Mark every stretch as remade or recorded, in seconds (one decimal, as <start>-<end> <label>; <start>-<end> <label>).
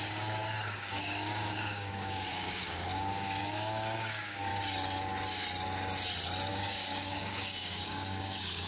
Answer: 0.0-4.5 remade; 4.5-6.5 recorded; 6.5-8.7 remade